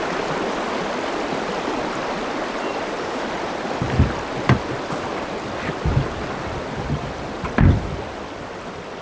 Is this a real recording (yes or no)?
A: yes